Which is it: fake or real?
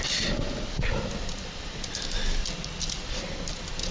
real